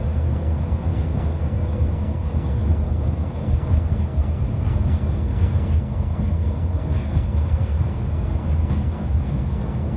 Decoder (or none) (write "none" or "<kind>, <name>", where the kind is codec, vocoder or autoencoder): codec, SNAC